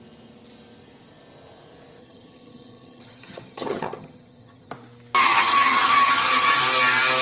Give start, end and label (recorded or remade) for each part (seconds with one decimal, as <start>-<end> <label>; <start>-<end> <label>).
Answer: 0.0-2.0 recorded; 2.0-4.7 remade; 4.7-5.2 recorded; 5.2-6.6 remade; 6.6-7.2 recorded